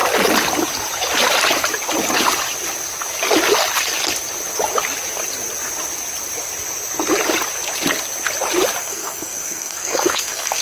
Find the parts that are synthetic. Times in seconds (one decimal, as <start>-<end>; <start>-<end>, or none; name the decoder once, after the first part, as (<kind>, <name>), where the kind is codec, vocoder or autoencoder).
8.8-10.6 (codec, SNAC)